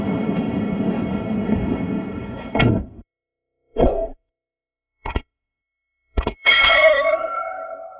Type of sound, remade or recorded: remade